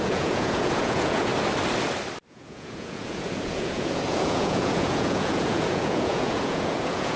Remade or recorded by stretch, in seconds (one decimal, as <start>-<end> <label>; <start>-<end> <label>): 0.0-1.3 remade; 1.3-2.3 recorded; 2.3-7.2 remade